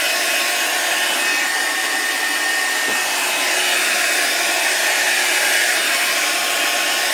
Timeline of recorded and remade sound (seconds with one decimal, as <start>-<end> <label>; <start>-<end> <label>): 0.0-7.1 recorded

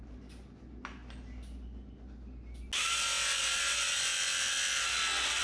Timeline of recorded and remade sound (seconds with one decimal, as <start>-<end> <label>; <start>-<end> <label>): 0.0-5.4 recorded